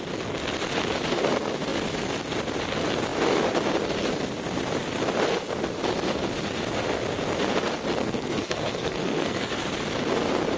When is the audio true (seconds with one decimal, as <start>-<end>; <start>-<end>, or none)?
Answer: 0.0-8.0; 9.6-10.6